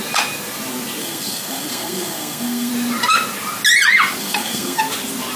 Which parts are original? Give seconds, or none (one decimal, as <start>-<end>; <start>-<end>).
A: 0.0-1.0; 2.7-4.2; 4.8-5.4